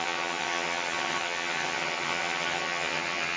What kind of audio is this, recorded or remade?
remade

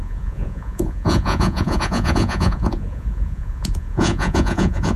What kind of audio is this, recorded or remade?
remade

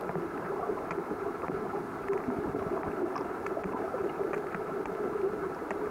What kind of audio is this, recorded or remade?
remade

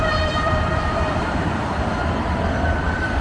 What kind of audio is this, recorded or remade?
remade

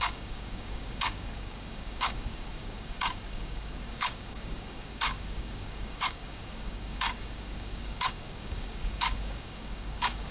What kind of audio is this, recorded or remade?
remade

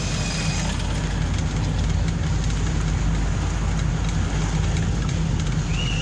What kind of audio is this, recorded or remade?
recorded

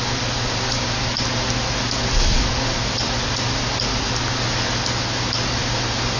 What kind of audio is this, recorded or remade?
recorded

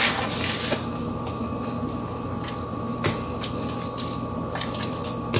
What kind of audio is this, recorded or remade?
recorded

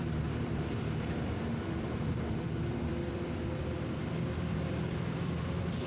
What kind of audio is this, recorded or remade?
remade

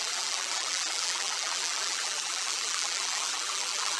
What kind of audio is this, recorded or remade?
remade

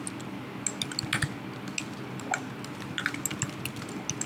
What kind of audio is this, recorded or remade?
recorded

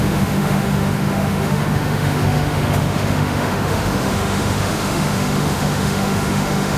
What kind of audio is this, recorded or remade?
remade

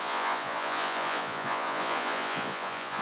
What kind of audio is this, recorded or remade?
remade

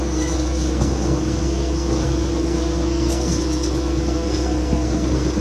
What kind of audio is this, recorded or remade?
remade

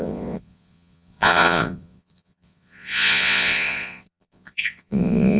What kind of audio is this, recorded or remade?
remade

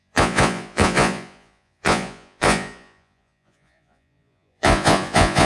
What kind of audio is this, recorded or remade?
remade